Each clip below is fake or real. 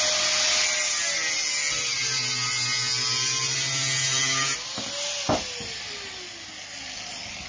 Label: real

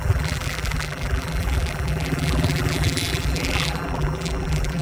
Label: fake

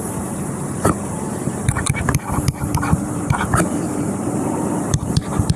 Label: fake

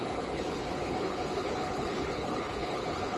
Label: fake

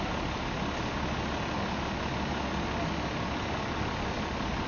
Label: real